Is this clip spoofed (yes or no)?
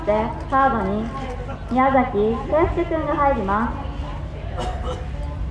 no